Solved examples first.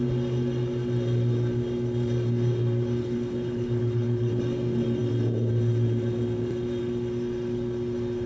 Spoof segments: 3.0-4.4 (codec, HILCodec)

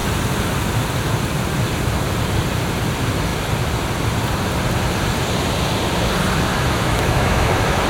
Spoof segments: 6.5-7.5 (autoencoder, DAC-VAE)

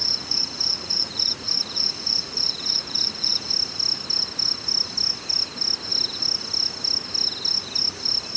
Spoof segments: 0.0-3.5 (vocoder, Vocos)

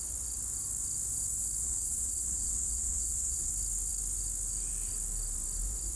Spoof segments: 1.6-3.5 (vocoder, WaveNeXt)

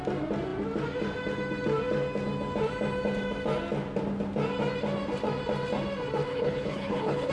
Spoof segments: 6.3-7.3 (codec, HILCodec)